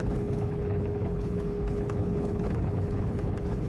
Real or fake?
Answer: fake